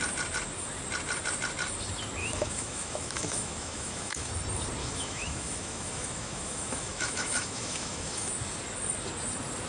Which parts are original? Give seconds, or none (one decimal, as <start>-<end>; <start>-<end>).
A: 0.0-2.2; 4.3-4.8; 8.3-9.7